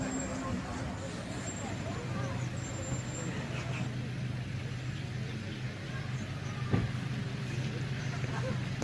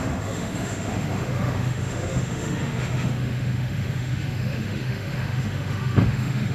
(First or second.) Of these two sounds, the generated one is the second